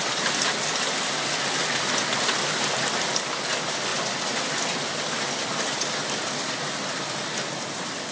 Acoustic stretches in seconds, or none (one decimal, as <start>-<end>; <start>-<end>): 0.0-8.1